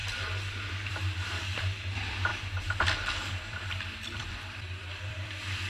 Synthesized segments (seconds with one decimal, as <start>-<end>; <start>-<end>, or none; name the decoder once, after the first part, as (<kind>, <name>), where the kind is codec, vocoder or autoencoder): 2.3-5.7 (vocoder, BigVGAN v2)

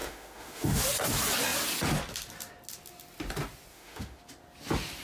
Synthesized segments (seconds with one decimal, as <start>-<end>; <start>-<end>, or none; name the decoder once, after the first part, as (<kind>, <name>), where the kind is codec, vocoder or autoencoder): 0.0-0.8 (autoencoder, DAC-VAE); 3.7-4.2

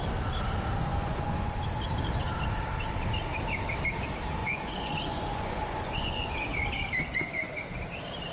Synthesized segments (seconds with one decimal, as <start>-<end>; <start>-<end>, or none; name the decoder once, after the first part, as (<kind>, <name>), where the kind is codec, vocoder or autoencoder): 0.9-1.5 (vocoder, Vocos); 4.4-6.3; 7.1-7.6

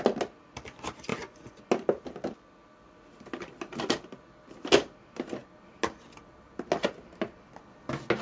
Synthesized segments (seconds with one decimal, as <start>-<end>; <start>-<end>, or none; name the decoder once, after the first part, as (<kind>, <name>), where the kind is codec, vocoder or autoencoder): 1.1-1.7 (vocoder, Vocos)

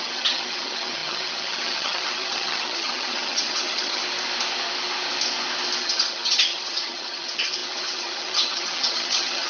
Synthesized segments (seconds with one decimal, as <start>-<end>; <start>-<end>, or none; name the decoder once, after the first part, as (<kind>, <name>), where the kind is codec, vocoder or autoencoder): 0.0-4.0 (vocoder, HiFi-GAN); 5.8-9.5

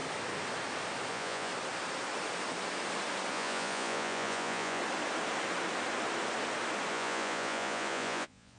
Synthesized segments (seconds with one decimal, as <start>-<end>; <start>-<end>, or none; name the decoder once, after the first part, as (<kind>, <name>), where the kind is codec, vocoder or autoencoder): 1.1-1.5 (vocoder, Vocos); 3.3-4.8; 6.9-8.6

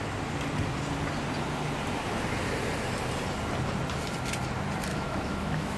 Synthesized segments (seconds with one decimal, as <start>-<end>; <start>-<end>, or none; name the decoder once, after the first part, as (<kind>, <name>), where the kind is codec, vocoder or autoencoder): 4.9-5.8 (autoencoder, DAC-VAE)

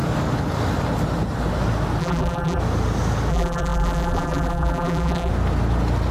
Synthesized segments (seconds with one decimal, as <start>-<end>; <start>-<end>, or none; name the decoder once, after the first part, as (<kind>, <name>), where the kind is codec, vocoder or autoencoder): 2.0-2.6 (vocoder, BigVGAN v2); 3.3-5.3